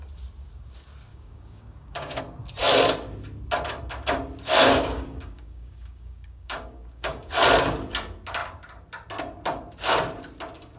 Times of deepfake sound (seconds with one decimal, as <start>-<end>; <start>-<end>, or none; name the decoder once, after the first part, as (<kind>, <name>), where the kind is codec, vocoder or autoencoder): 1.1-2.2 (codec, DAC); 4.6-7.3

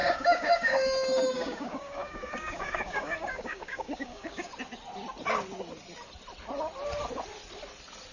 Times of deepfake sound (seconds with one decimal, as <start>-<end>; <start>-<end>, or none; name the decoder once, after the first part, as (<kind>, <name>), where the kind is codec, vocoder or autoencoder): 0.0-4.5 (codec, DAC)

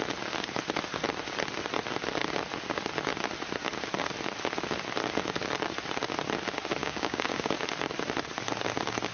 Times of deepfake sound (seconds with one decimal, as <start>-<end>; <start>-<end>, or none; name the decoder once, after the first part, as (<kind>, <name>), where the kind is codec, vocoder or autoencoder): 6.8-7.5 (codec, DAC)

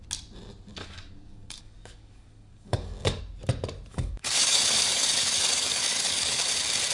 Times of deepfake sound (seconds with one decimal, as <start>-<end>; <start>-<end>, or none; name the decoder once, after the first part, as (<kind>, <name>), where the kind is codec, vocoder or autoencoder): 0.7-3.2 (codec, DAC); 3.9-6.4

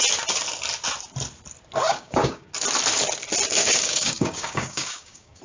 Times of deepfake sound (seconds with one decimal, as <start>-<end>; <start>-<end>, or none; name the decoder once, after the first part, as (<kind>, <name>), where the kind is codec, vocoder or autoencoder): 1.9-2.5 (codec, DAC); 3.6-5.4